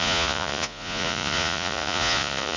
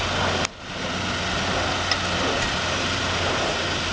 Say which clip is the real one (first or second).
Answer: second